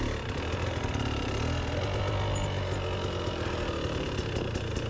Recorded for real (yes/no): yes